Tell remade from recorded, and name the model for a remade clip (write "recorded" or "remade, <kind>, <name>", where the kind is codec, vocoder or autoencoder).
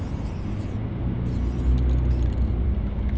recorded